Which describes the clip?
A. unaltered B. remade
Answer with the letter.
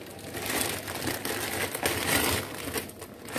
A